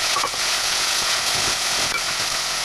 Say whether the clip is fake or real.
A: fake